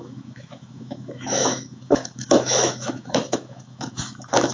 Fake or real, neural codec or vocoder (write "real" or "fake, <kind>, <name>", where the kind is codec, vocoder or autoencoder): fake, autoencoder, DAC-VAE